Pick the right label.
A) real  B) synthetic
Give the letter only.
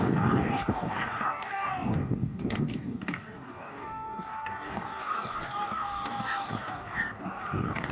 B